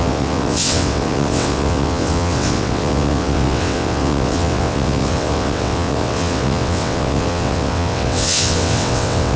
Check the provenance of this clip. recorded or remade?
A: remade